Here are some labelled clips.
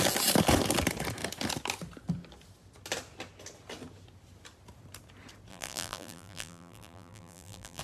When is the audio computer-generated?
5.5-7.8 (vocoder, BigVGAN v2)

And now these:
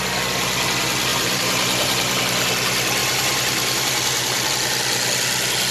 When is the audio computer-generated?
1.1-2.2 (vocoder, BigVGAN v2); 3.0-4.5

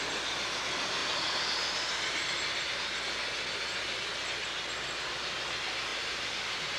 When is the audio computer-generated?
1.0-2.7 (vocoder, BigVGAN v2); 5.9-6.8

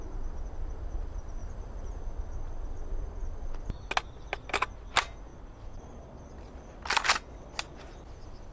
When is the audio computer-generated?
1.4-2.0 (vocoder, BigVGAN v2)

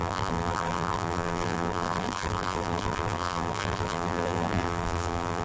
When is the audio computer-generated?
0.0-5.4 (vocoder, BigVGAN v2)

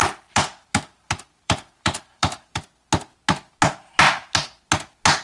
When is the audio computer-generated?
0.0-2.6 (vocoder, BigVGAN v2)